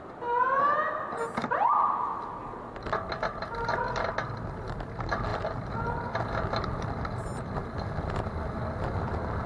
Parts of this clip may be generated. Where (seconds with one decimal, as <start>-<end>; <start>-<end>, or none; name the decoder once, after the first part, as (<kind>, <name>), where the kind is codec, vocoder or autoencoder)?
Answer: none